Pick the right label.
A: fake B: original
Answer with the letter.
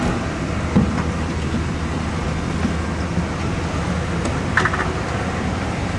B